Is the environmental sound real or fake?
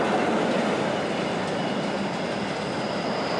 real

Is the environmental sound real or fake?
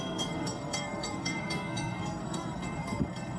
fake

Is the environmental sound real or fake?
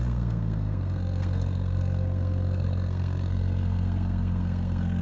fake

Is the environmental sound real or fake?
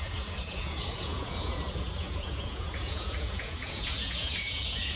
fake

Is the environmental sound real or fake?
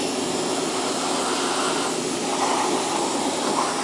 real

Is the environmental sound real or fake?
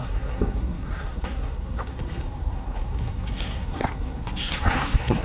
fake